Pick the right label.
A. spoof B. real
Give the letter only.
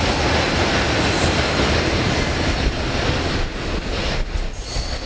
B